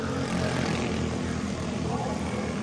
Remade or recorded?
recorded